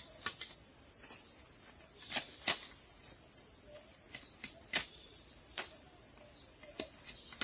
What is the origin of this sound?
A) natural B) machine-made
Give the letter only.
A